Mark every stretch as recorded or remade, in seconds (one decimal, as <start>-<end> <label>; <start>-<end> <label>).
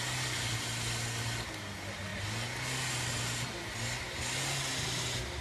0.0-5.4 recorded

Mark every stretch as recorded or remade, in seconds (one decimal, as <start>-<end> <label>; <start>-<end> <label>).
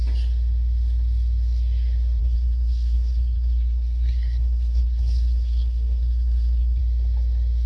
0.0-2.2 recorded; 2.2-6.8 remade; 6.8-7.7 recorded